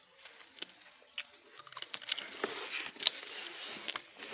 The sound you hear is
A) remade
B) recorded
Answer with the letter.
B